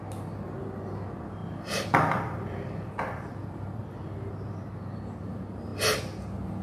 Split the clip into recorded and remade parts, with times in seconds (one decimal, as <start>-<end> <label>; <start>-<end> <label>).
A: 0.0-1.4 recorded; 1.4-4.3 remade; 4.3-6.6 recorded